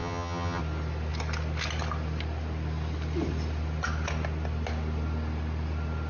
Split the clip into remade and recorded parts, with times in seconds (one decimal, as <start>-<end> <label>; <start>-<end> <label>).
0.0-0.6 remade; 0.6-6.1 recorded